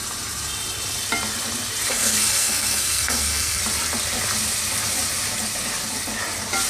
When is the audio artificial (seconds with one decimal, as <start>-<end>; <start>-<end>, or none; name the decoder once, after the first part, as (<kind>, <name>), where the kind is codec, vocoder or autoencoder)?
1.9-3.6 (codec, SNAC)